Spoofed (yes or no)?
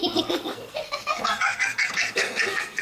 yes